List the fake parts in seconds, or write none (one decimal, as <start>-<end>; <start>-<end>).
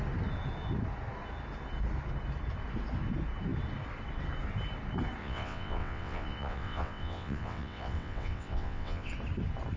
5.2-9.1